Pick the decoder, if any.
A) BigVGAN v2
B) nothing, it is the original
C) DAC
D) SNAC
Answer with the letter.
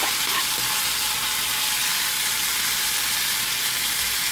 B